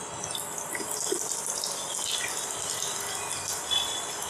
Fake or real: real